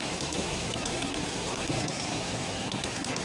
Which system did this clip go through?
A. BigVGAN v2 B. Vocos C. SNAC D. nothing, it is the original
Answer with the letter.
C